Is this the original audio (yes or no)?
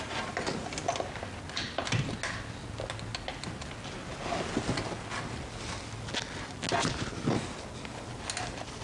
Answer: yes